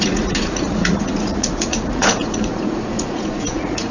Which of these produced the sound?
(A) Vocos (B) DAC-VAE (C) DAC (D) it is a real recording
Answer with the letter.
A